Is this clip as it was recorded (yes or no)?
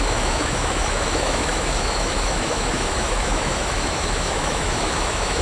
no